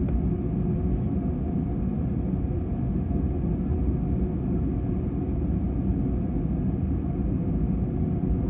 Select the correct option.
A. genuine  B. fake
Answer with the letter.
A